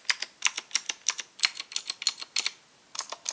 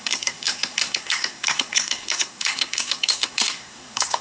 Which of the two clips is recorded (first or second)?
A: first